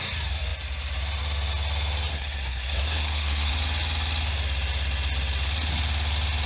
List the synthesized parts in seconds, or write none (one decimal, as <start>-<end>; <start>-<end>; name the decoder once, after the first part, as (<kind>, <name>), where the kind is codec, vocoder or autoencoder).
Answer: 2.1-3.5 (codec, SNAC)